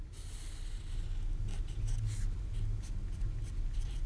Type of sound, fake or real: real